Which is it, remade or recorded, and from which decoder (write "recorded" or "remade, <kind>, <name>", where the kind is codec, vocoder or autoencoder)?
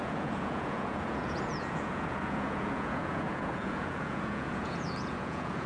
remade, vocoder, Vocos